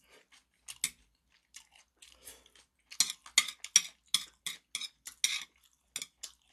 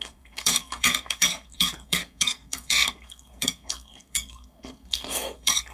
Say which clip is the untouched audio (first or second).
first